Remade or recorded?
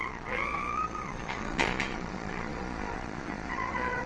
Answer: remade